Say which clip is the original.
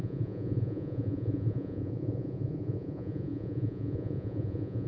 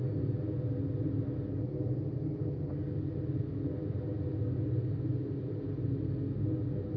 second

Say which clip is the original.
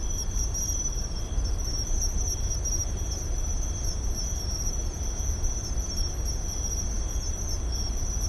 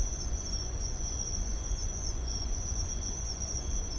first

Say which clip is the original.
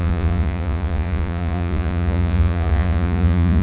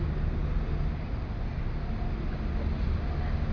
second